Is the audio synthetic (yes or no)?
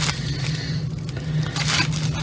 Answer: no